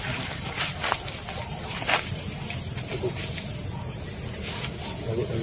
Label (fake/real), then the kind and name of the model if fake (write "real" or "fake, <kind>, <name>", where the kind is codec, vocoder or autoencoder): real